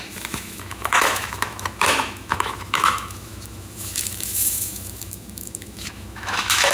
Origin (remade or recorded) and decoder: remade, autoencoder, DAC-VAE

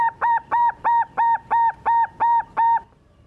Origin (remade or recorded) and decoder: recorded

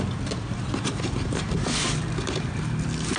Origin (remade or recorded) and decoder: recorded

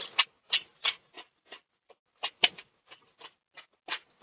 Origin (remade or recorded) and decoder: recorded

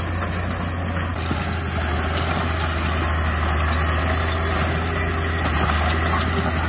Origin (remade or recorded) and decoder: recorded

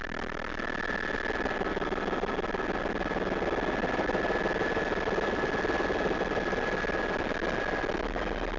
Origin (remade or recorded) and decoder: recorded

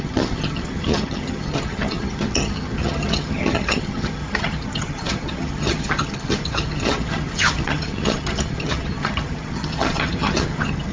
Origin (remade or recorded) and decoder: remade, vocoder, HiFi-GAN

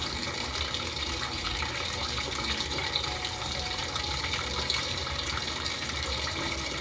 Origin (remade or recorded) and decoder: remade, vocoder, BigVGAN v2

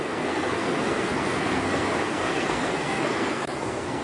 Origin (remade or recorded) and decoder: remade, codec, SNAC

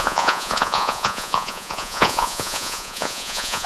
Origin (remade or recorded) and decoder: remade, vocoder, Vocos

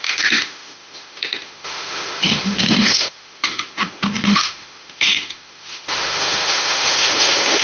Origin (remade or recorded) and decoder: remade, autoencoder, DAC-VAE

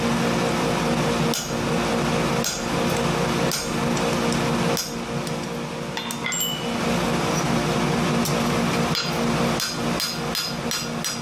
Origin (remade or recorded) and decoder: recorded